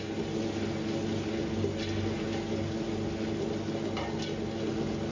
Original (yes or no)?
yes